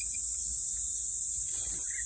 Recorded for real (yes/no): yes